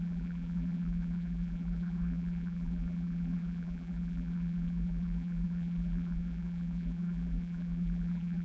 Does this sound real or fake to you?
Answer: fake